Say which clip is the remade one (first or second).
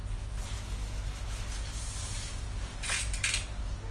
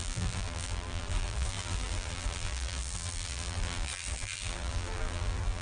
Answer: second